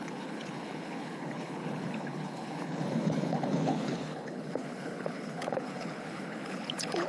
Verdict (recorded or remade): remade